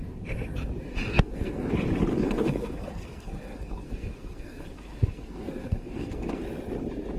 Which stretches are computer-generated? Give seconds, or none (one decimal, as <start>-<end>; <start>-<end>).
1.1-1.7; 2.1-6.4